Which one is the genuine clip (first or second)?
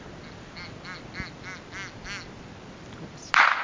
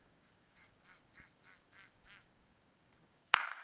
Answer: first